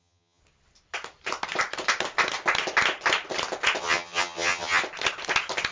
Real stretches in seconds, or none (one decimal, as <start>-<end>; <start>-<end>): 0.4-3.8; 4.8-5.7

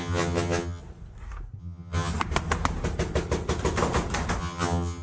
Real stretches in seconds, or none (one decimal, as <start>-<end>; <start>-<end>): 0.8-1.6; 2.1-4.4